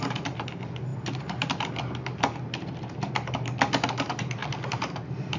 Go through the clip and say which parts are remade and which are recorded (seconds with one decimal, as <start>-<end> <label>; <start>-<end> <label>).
0.0-5.4 recorded